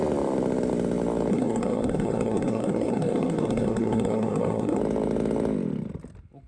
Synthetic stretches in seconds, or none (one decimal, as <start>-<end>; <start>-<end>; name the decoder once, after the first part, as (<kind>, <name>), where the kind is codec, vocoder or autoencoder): 1.3-4.8 (codec, SNAC)